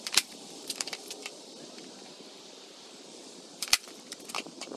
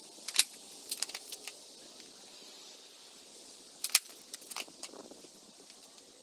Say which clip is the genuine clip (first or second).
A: second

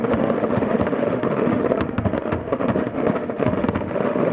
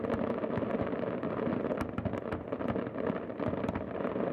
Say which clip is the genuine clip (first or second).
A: second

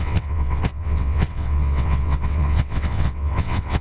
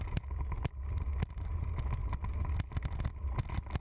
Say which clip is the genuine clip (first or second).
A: second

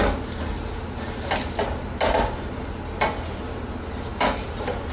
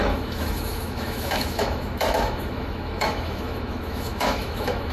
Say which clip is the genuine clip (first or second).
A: first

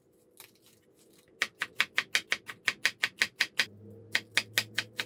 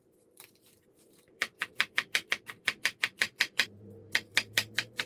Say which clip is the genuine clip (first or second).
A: first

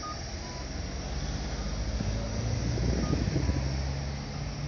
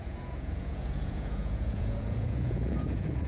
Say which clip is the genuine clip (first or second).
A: first